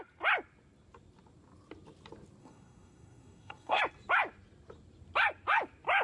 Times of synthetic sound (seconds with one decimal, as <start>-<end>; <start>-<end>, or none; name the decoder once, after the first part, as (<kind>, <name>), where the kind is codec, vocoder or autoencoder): 2.4-3.8 (codec, SNAC)